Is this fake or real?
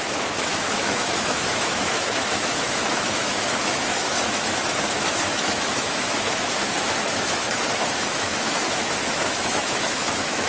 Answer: fake